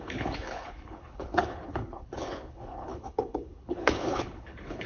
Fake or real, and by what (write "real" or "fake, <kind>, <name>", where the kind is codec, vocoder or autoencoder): fake, codec, HILCodec